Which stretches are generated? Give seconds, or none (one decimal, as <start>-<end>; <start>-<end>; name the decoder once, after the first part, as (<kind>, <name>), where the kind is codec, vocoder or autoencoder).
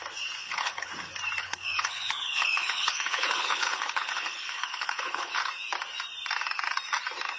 0.4-0.9 (codec, HILCodec); 1.4-5.5